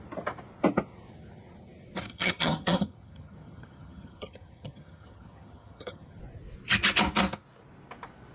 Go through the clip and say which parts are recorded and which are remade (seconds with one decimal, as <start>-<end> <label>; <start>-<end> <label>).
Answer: 0.0-2.1 recorded; 2.1-6.2 remade; 6.2-8.3 recorded